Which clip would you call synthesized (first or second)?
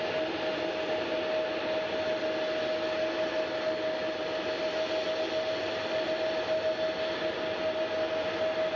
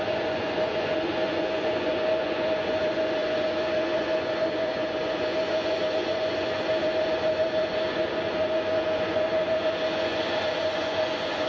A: second